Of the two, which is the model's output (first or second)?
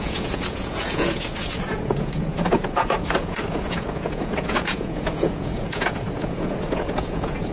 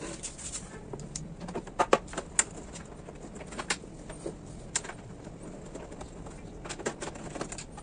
first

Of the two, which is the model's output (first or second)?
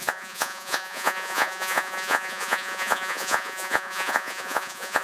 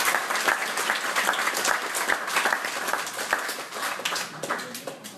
first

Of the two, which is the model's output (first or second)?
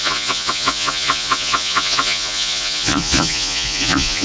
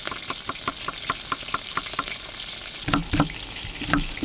first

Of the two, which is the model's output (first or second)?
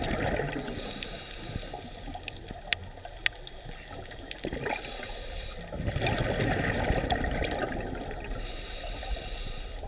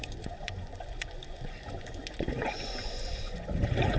second